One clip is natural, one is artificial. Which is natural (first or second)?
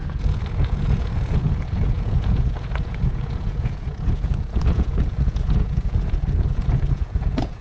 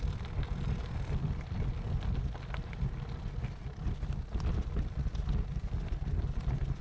second